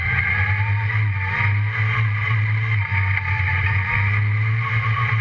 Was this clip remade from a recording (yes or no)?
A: no